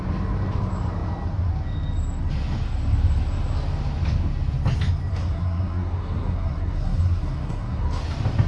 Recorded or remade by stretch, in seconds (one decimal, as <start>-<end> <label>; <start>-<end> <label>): 0.0-5.1 recorded; 5.1-8.0 remade; 8.0-8.5 recorded